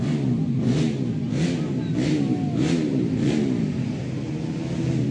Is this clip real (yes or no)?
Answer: yes